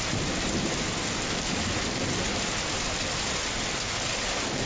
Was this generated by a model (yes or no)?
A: no